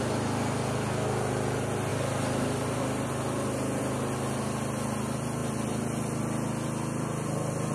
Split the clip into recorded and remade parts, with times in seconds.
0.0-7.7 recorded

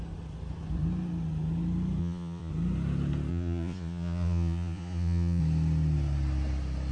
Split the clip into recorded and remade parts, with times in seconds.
0.0-2.0 recorded; 2.0-2.5 remade; 2.5-3.3 recorded; 3.3-5.4 remade; 5.4-6.9 recorded

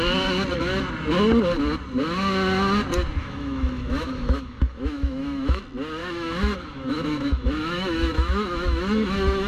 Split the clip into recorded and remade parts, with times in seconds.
0.0-3.2 recorded; 3.2-5.6 remade; 5.6-6.0 recorded; 6.0-9.5 remade

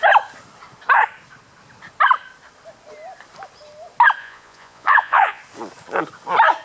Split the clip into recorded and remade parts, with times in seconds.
0.0-4.2 recorded; 4.2-5.4 remade; 5.4-6.6 recorded

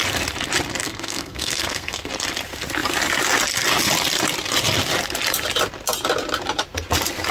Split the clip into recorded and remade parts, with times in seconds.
0.0-0.8 recorded; 0.8-2.1 remade; 2.1-7.3 recorded

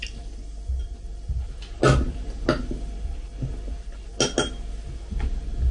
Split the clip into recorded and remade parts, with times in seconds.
0.0-5.7 recorded